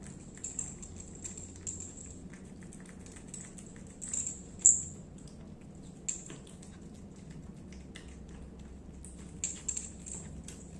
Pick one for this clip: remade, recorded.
recorded